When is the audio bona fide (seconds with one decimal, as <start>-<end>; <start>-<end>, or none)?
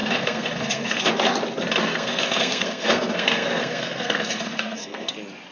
1.1-1.8; 5.1-5.5